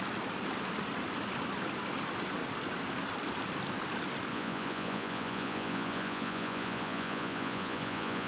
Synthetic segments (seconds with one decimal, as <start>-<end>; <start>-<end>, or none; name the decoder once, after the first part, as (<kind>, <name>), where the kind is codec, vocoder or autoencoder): 4.3-8.3 (vocoder, Vocos)